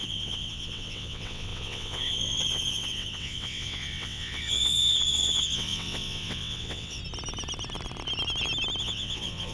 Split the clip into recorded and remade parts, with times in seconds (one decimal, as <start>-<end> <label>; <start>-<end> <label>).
0.0-7.0 remade; 7.0-8.8 recorded; 8.8-9.5 remade